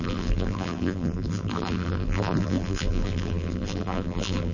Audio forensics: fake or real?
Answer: fake